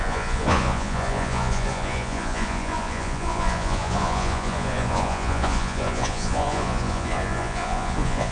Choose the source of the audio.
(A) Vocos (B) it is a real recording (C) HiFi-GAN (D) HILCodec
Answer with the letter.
A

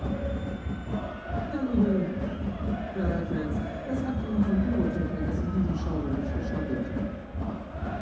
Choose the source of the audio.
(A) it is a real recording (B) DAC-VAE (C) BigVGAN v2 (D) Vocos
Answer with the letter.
A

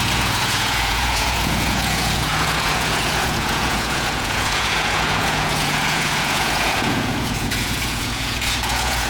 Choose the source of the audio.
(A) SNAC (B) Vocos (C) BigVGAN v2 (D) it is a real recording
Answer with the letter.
B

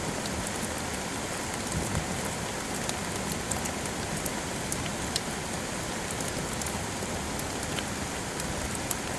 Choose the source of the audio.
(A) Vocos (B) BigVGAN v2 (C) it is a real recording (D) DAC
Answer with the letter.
C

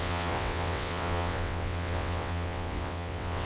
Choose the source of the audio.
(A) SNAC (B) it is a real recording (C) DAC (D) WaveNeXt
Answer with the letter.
D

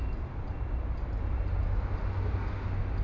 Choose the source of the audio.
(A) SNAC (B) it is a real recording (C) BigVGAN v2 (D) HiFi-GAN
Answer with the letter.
B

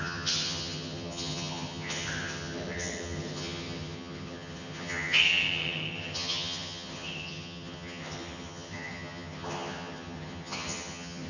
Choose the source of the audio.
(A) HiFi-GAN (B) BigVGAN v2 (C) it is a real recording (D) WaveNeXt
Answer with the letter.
A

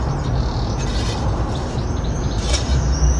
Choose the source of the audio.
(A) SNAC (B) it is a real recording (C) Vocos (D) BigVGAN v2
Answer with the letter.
B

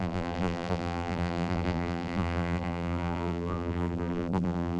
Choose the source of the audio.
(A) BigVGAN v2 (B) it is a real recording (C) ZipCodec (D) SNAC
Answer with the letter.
A